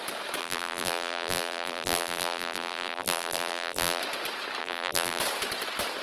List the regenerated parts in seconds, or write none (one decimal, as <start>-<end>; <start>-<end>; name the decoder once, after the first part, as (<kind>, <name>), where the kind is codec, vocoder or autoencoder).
0.4-4.0 (vocoder, BigVGAN v2); 4.6-5.2